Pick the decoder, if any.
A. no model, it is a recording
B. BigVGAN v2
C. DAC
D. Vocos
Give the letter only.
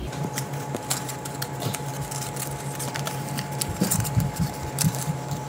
B